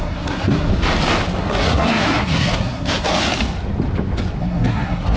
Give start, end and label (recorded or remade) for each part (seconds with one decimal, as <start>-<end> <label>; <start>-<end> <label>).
0.0-0.7 remade; 0.7-1.4 recorded; 1.4-3.1 remade; 3.1-4.4 recorded; 4.4-5.2 remade